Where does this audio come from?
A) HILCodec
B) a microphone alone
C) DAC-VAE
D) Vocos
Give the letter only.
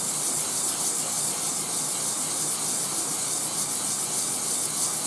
B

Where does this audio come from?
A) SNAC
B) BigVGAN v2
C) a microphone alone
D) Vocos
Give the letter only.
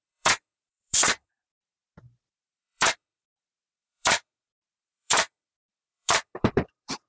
B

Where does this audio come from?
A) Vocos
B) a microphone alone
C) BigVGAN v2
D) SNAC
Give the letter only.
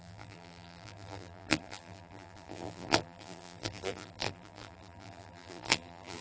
C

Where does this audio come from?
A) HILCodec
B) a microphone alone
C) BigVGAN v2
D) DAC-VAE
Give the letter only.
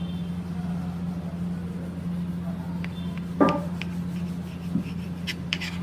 B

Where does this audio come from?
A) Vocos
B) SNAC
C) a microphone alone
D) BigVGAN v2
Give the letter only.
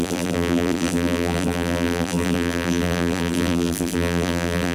D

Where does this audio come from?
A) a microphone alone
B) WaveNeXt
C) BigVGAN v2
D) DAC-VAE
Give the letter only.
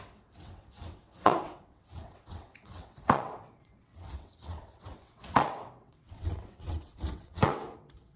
B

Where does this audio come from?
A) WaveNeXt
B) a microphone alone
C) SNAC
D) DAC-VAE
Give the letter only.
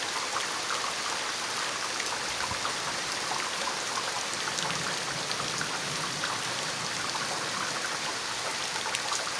B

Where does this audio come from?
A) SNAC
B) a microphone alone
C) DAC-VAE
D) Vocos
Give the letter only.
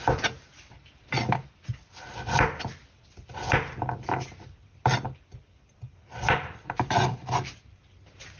B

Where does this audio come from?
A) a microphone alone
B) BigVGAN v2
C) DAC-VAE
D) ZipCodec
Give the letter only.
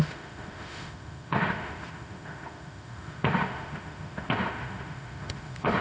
C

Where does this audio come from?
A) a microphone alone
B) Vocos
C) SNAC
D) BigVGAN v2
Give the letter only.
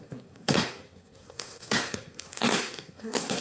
C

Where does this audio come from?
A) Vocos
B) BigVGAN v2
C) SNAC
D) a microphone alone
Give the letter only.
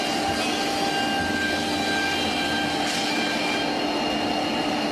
D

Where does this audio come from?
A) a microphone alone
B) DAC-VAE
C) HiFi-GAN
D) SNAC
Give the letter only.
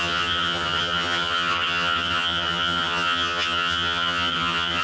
C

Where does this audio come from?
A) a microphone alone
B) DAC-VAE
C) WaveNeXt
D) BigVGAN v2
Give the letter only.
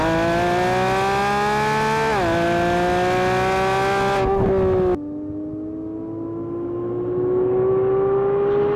A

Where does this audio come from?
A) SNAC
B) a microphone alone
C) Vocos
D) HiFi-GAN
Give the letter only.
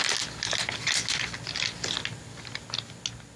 B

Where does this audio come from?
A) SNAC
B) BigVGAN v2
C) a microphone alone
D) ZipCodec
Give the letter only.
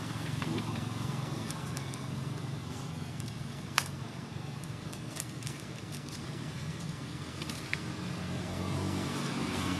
A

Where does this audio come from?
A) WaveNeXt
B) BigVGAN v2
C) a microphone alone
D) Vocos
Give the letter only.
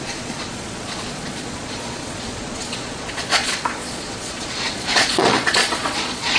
D